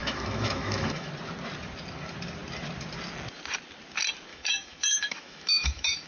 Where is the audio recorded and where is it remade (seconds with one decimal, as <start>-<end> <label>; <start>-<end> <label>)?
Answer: 0.0-1.1 remade; 1.1-4.3 recorded; 4.3-6.1 remade